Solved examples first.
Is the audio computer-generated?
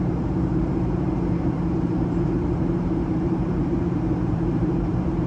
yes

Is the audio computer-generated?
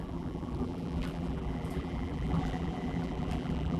yes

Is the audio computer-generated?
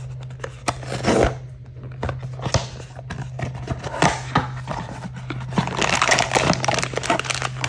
no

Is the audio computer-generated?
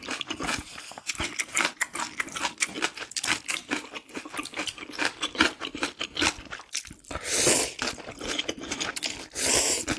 yes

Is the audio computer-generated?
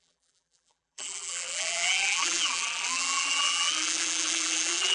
yes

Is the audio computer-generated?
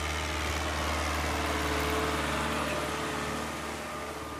no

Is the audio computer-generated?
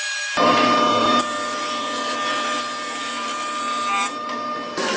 yes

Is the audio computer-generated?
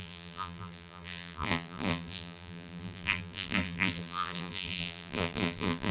yes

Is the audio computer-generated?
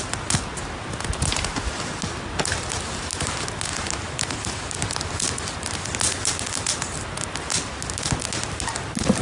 no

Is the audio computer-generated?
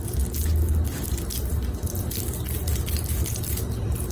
no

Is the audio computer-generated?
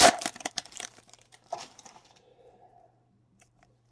yes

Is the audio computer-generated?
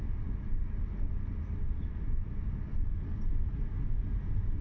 no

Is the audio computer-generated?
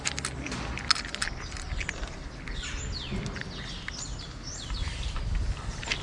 no